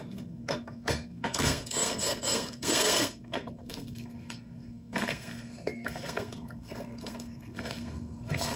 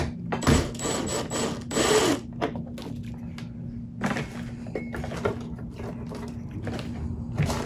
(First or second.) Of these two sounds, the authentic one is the second